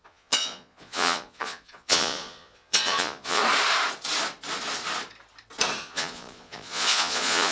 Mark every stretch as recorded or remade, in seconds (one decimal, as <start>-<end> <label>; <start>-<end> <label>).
0.0-3.4 remade; 3.4-5.8 recorded; 5.8-7.5 remade